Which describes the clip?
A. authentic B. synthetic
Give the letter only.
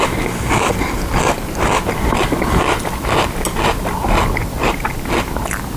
A